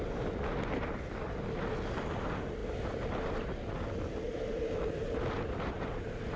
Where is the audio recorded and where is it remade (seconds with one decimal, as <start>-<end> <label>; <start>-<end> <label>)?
0.0-6.4 recorded